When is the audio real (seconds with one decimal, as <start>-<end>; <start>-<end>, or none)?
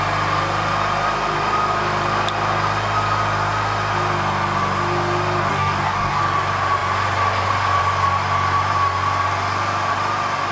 0.0-5.5; 6.2-10.5